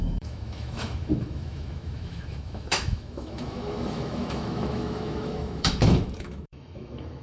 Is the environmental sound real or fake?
fake